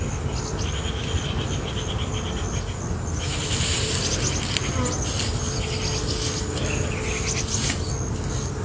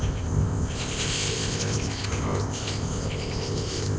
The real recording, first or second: first